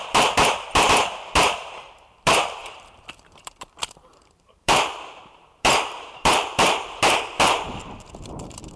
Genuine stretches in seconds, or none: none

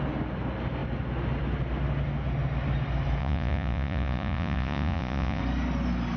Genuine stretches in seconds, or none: 0.0-3.2; 5.4-6.2

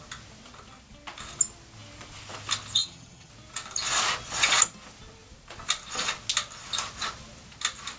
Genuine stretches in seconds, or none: 0.0-2.8; 3.3-8.0